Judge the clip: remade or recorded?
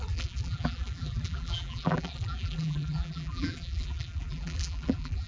remade